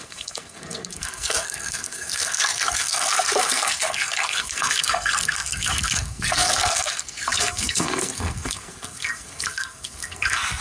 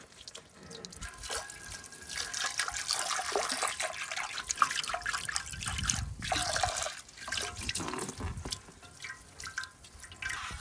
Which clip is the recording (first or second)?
second